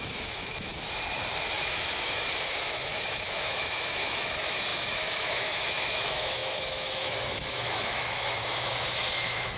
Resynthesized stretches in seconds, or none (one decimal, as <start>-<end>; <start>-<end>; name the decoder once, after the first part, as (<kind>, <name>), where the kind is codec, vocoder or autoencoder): 0.0-0.7 (autoencoder, DAC-VAE); 1.6-9.6